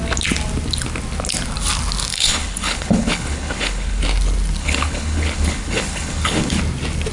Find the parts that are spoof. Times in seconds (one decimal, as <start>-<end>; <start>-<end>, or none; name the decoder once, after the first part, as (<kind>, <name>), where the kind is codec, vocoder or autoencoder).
2.1-4.0 (codec, HILCodec); 4.6-6.6